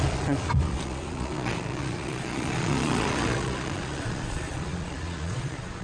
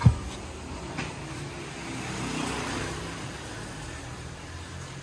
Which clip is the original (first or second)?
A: second